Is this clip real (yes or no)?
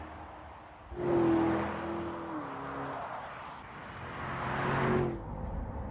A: yes